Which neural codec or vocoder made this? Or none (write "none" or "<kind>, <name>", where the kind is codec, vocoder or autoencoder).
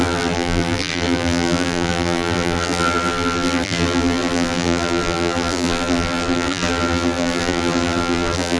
vocoder, BigVGAN v2